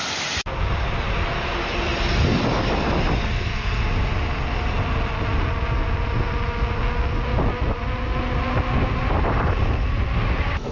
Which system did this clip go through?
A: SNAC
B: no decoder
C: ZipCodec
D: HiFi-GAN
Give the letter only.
B